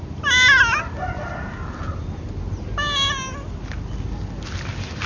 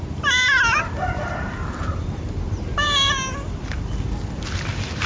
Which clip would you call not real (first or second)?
second